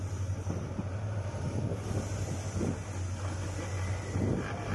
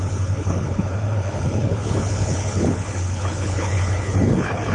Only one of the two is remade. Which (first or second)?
second